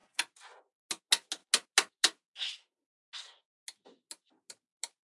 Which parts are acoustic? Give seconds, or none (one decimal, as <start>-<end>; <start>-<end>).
0.0-5.0